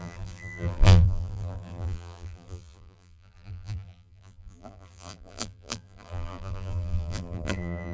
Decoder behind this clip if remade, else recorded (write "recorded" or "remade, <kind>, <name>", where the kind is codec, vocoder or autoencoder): remade, vocoder, BigVGAN v2